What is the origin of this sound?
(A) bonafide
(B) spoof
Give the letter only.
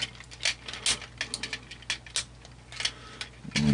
A